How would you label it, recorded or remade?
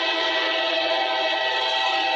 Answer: remade